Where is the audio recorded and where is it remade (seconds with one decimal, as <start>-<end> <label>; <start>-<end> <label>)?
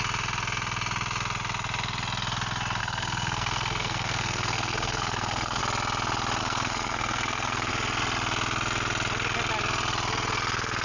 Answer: 0.0-2.8 recorded; 2.8-5.6 remade; 5.6-6.4 recorded; 6.4-7.7 remade; 7.7-10.8 recorded